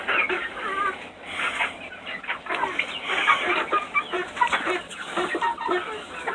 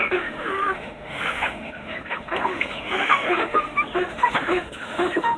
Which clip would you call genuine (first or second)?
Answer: first